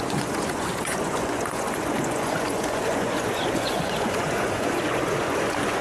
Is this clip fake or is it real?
fake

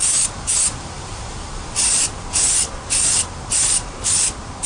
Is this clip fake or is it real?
fake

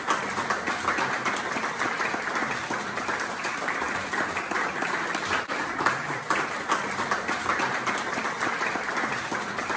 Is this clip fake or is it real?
real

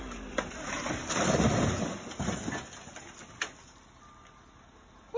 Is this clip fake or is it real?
real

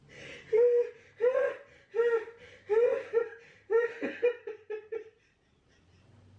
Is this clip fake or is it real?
fake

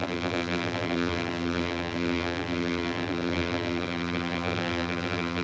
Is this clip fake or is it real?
fake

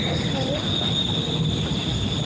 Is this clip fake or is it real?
real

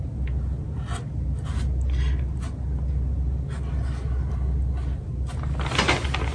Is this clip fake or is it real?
real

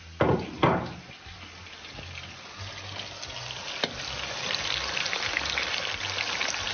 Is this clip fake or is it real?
real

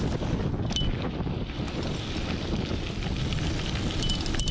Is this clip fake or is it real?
real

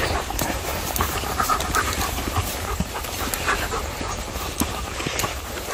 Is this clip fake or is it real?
fake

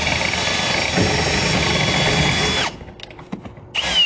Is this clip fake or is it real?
real